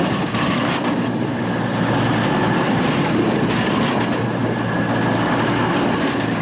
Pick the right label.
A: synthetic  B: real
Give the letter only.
B